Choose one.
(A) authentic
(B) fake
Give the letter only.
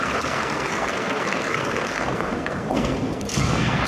B